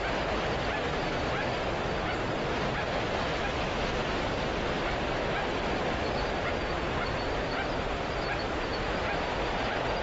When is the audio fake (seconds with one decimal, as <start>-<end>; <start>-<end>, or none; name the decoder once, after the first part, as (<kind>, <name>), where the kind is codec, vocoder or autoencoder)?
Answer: none